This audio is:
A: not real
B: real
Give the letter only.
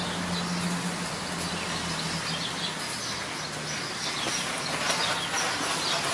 B